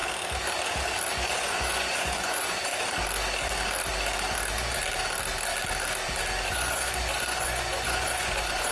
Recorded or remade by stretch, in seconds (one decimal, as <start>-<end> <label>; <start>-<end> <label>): 0.0-1.1 recorded; 1.1-2.7 remade; 2.7-6.5 recorded; 6.5-8.7 remade